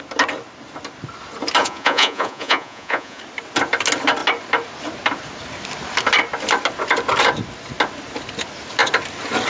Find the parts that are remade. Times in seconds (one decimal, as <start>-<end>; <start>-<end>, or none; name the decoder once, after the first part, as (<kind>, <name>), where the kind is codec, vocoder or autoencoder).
1.6-3.2 (vocoder, Vocos)